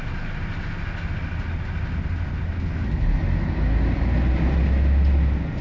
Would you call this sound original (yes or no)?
yes